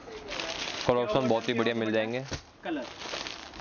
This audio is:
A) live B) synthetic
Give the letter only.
A